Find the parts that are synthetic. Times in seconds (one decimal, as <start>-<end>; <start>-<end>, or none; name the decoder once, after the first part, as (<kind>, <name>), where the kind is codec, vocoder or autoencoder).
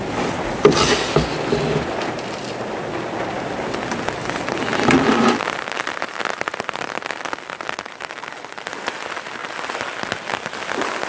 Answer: none